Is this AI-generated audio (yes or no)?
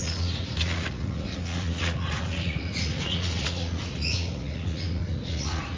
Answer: yes